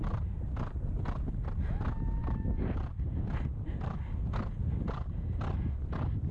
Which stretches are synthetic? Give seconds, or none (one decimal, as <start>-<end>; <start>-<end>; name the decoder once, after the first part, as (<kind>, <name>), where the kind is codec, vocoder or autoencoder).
none